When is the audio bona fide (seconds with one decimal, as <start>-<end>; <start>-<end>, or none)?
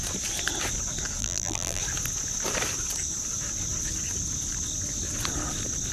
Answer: 0.0-1.2; 1.8-5.9